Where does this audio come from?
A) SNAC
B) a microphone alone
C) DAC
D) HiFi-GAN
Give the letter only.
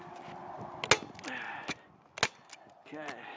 B